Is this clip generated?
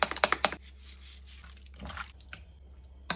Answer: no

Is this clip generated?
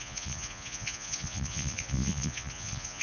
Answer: yes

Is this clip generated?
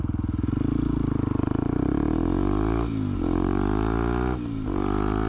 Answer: no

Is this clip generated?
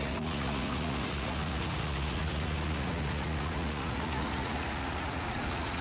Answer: yes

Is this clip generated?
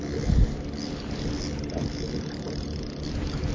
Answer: no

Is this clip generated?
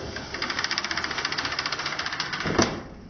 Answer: no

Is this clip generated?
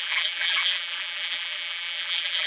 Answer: yes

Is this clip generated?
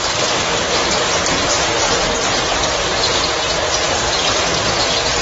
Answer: no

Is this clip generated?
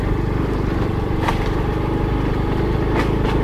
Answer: no